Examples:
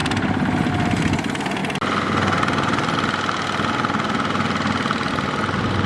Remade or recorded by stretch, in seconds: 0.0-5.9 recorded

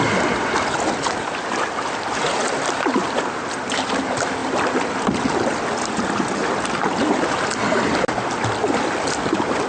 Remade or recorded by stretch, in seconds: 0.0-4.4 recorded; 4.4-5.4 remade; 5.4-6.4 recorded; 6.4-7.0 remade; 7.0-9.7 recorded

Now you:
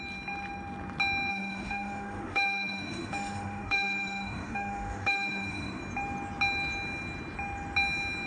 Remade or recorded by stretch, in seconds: 0.0-1.3 recorded; 1.3-5.8 remade; 5.8-8.3 recorded